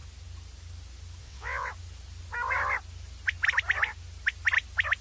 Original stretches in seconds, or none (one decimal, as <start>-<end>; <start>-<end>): 0.0-1.2; 1.7-5.0